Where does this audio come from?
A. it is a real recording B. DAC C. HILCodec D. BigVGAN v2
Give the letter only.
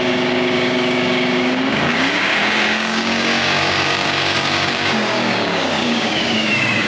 B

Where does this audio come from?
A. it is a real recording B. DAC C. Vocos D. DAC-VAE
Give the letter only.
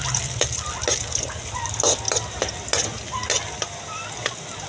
A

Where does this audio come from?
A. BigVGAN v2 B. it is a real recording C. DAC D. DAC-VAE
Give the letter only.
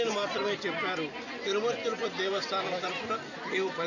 B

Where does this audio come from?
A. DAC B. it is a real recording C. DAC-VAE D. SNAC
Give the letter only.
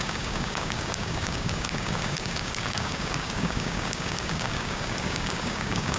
A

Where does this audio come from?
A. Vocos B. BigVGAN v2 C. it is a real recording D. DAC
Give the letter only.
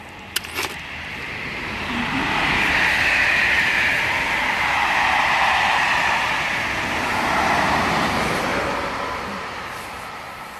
C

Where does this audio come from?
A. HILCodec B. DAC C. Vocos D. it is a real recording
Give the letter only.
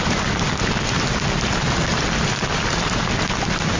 D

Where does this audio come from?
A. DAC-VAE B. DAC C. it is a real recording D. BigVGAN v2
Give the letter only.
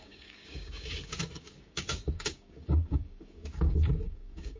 B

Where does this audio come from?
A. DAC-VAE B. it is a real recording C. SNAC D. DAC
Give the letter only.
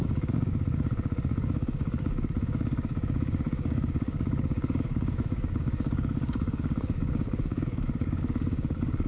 D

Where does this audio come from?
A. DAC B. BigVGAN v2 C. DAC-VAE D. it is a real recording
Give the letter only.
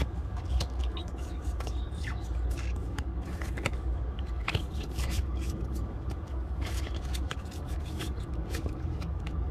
A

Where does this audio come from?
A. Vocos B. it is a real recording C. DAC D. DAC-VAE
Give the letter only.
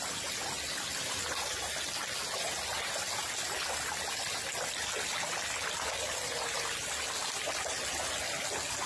B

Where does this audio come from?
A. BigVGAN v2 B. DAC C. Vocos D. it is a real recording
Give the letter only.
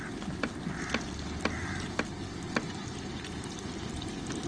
D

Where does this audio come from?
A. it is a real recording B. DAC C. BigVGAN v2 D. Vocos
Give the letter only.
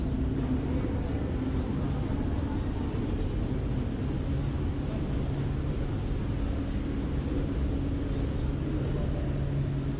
A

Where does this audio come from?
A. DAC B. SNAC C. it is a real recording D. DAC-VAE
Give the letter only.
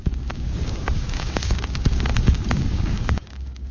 A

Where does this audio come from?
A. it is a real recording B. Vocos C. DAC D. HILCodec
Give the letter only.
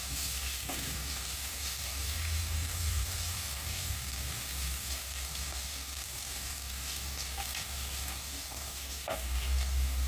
C